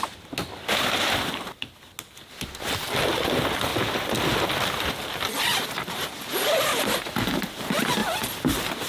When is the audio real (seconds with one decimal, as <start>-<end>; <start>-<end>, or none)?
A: 0.0-8.9

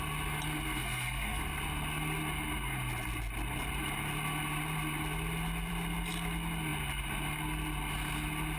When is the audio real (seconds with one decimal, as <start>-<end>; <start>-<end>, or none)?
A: 0.0-0.8; 1.4-8.6

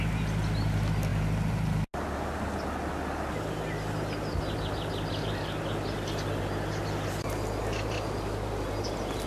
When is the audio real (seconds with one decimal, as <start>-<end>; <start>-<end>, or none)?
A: 0.0-9.3

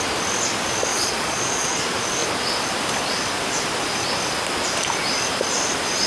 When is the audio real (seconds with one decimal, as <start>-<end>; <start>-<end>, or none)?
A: 0.0-0.9; 1.8-6.1

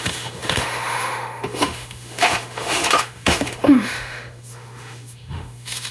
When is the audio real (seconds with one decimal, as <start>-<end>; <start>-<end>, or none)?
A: none

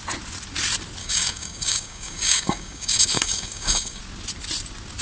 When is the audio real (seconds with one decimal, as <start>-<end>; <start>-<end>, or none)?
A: 0.0-1.0; 4.0-5.0

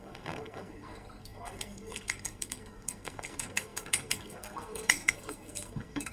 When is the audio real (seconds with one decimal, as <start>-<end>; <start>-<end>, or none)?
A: none

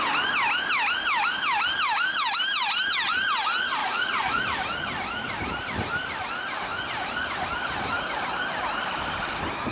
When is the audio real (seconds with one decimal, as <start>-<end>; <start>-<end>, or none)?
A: 0.0-3.8; 4.4-9.7